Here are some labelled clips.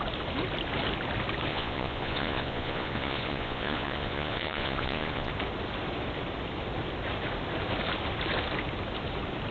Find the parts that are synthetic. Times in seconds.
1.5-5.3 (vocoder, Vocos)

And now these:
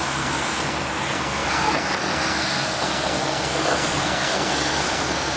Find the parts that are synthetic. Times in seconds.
0.0-5.4 (codec, SNAC)

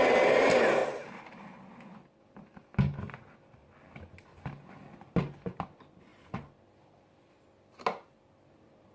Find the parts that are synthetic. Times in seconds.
none